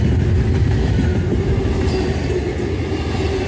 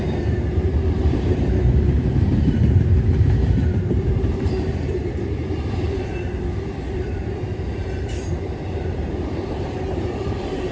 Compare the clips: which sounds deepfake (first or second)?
second